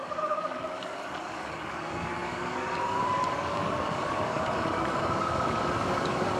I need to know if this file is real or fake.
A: fake